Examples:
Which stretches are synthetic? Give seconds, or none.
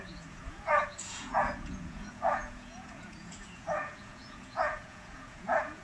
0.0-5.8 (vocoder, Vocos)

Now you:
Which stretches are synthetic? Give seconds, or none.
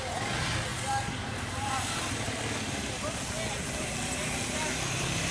none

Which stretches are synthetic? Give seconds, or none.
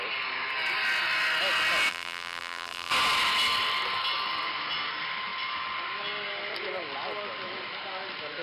1.9-2.9 (vocoder, BigVGAN v2)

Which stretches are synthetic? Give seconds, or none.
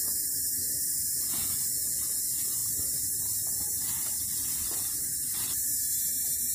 1.4-2.2 (vocoder, Vocos)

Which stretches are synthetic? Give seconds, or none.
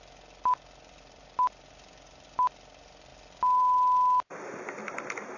none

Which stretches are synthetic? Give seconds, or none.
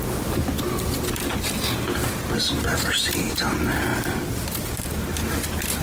2.7-3.3 (vocoder, Vocos)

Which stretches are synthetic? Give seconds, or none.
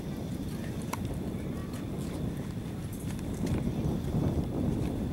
none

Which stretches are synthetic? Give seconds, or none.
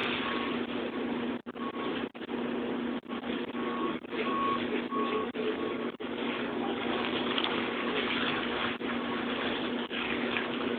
3.2-8.6 (codec, DAC); 9.7-10.8